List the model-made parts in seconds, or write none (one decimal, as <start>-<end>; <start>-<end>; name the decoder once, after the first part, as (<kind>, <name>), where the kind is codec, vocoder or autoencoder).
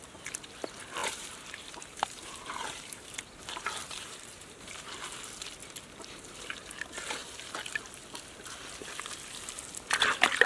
1.0-5.0 (vocoder, BigVGAN v2)